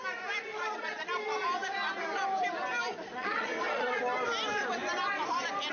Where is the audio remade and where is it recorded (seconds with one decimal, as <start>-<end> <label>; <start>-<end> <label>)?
0.0-0.5 recorded; 0.5-1.1 remade; 1.1-3.1 recorded; 3.1-4.0 remade; 4.0-5.7 recorded